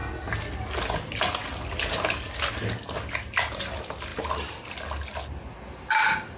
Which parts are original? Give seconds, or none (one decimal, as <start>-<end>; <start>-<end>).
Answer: 0.0-6.4